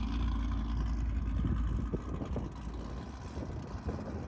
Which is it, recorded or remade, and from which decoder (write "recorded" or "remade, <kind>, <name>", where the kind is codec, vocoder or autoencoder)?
recorded